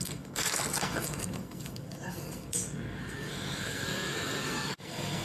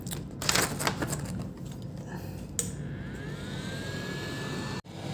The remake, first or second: first